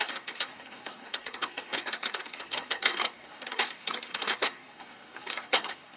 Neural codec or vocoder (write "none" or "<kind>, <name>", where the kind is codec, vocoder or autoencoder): codec, SNAC